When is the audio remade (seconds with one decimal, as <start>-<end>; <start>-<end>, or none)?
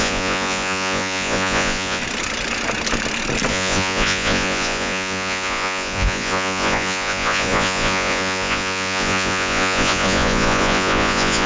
0.0-2.0; 3.5-11.5